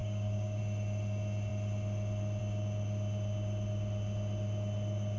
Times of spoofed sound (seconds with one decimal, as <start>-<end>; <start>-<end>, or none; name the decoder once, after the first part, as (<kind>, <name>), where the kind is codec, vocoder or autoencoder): 0.0-0.6 (codec, DAC)